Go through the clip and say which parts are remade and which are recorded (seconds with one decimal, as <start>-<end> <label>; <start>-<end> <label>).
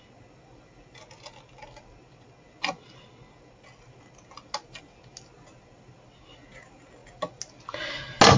0.0-8.4 recorded